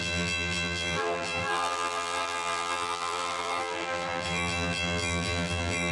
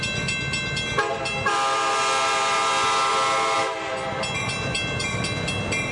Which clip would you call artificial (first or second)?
first